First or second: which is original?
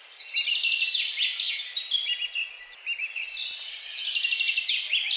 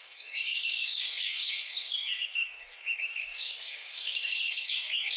first